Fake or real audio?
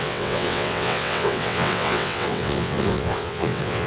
fake